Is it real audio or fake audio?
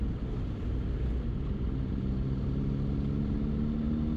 real